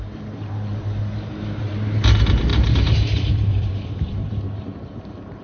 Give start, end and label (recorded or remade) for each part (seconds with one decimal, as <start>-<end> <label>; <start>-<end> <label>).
0.0-5.4 remade